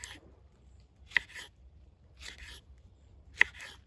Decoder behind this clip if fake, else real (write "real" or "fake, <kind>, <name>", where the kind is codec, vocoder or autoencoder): real